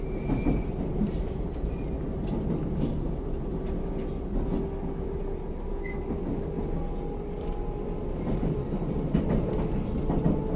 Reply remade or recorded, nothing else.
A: recorded